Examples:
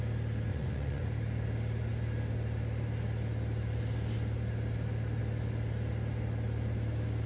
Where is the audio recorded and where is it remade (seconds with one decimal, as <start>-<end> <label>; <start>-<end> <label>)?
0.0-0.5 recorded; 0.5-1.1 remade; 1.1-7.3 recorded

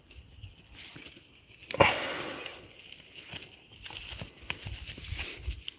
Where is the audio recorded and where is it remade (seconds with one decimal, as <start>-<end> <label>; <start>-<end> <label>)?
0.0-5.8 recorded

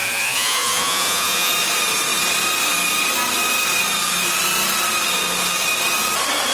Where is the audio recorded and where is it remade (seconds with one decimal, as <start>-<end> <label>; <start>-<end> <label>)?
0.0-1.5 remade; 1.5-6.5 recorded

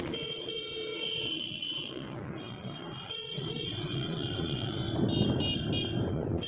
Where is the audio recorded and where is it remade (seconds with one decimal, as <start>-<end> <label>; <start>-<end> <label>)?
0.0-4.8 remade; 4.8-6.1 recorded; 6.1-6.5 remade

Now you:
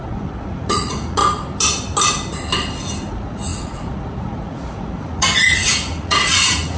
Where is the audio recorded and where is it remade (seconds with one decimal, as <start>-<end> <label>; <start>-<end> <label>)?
0.0-1.2 remade; 1.2-3.1 recorded; 3.1-6.8 remade